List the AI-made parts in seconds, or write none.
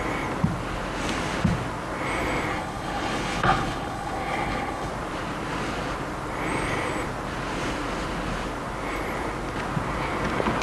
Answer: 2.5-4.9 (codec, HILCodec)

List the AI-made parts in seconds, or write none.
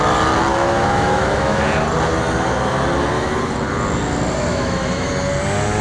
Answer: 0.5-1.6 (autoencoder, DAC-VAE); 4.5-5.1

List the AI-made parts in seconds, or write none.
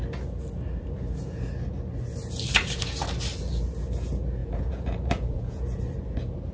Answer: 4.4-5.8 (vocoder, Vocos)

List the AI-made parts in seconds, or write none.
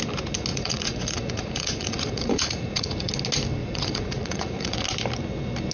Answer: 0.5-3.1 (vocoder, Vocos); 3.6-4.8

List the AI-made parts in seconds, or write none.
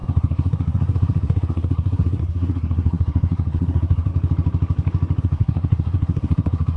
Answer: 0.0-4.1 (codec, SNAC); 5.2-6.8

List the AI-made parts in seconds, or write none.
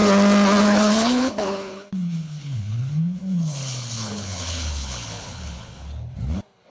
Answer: 0.6-6.7 (codec, HILCodec)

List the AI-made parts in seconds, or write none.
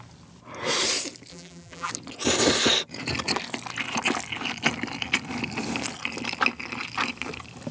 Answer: 1.3-1.9 (vocoder, BigVGAN v2)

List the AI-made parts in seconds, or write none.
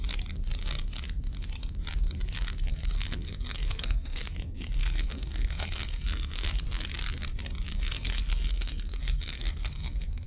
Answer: 2.7-6.5 (codec, SNAC); 7.7-10.3